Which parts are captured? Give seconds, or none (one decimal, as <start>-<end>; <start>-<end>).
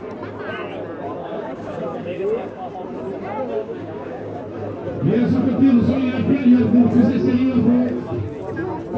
0.0-1.2; 2.7-3.6; 4.4-9.0